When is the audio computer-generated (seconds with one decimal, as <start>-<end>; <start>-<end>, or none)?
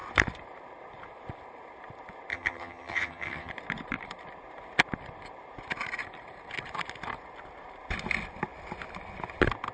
2.3-3.5